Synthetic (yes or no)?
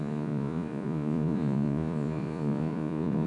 yes